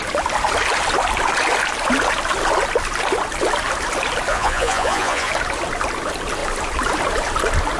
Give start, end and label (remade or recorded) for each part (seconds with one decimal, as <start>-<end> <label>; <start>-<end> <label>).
0.0-4.3 recorded; 4.3-5.3 remade; 5.3-7.8 recorded